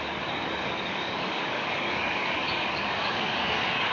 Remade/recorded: remade